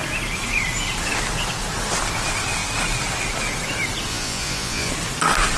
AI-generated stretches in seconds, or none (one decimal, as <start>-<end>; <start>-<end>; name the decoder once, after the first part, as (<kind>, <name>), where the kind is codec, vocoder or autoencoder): 4.1-4.9 (vocoder, Vocos)